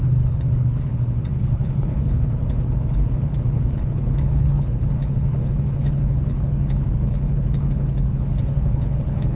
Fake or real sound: fake